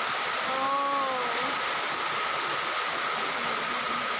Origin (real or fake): real